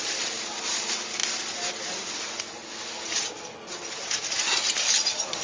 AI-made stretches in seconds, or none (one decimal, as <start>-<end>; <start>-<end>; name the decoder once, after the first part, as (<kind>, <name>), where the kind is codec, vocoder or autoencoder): none